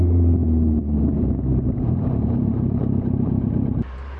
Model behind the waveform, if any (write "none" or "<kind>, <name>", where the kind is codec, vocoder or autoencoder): vocoder, BigVGAN v2